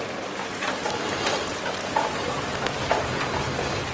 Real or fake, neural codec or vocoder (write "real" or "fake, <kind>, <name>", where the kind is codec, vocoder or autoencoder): real